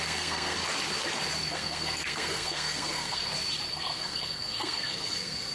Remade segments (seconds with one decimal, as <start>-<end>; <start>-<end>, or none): 0.0-0.6; 1.5-3.2; 3.7-5.5